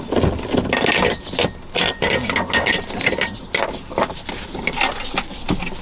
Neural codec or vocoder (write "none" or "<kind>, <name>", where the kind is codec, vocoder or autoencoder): none